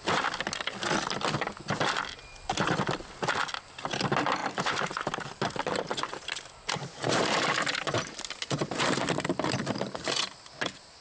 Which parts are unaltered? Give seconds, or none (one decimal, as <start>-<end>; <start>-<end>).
0.0-4.4; 9.1-9.6; 10.1-11.0